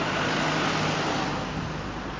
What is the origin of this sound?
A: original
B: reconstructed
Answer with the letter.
A